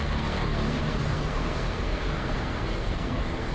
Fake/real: fake